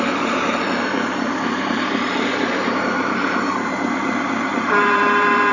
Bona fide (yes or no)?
no